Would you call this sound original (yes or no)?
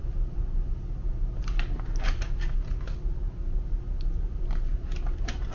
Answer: yes